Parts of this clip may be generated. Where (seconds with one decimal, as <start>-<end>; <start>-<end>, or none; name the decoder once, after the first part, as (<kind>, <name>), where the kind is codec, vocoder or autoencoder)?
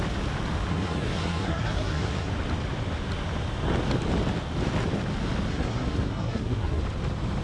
0.7-2.3 (codec, SNAC); 5.5-6.8